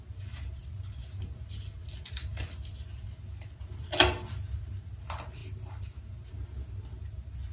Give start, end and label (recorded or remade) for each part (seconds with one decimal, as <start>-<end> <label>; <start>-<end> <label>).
0.0-7.5 recorded